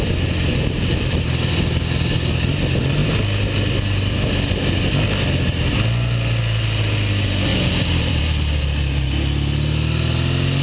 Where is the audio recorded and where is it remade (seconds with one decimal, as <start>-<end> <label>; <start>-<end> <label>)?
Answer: 0.0-0.5 recorded; 0.5-1.5 remade; 1.5-7.5 recorded; 7.5-8.2 remade; 8.2-10.6 recorded